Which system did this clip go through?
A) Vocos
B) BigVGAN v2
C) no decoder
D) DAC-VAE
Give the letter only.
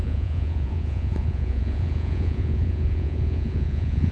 A